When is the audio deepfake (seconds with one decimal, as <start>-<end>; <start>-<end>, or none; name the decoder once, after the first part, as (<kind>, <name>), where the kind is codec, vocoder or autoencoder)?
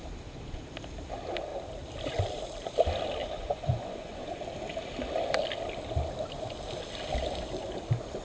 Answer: 3.2-4.4 (vocoder, Vocos)